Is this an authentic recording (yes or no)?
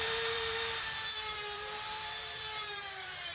no